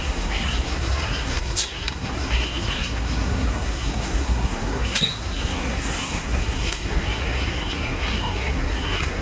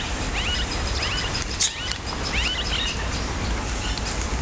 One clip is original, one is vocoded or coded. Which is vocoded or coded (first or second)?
first